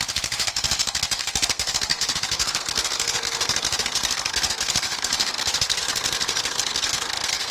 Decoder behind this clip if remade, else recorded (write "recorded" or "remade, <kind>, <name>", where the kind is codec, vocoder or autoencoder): remade, codec, SNAC